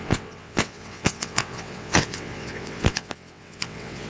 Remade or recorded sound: remade